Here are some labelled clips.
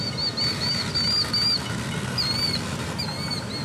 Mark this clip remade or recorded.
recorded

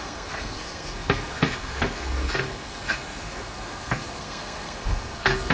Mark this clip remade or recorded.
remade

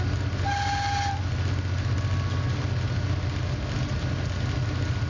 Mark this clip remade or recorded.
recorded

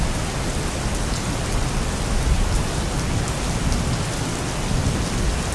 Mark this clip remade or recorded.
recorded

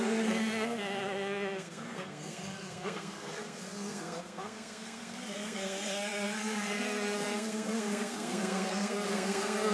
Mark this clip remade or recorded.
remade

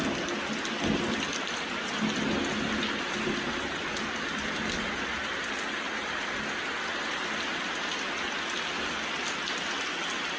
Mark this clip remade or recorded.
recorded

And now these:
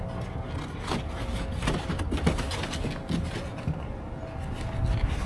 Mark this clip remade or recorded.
recorded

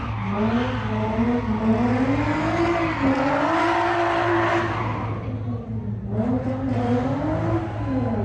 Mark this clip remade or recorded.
recorded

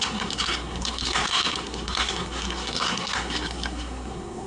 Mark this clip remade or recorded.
remade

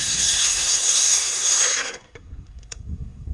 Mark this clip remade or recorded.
remade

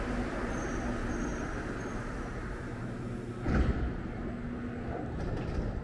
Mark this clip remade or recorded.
recorded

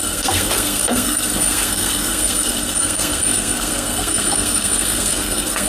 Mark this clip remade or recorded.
remade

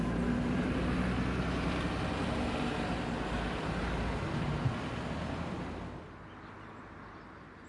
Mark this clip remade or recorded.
recorded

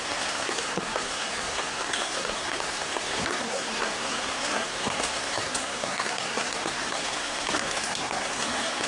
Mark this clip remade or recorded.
remade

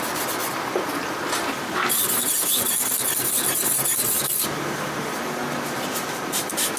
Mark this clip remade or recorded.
recorded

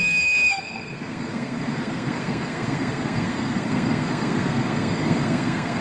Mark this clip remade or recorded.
remade